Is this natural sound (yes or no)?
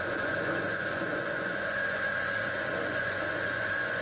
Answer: no